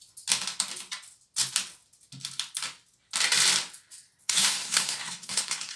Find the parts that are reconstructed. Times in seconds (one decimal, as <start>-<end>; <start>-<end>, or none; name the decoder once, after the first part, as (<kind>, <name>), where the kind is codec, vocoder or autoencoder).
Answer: 4.2-5.8 (codec, SNAC)